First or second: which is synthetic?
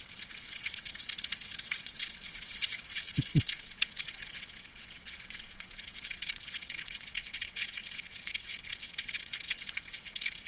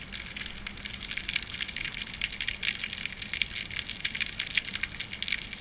first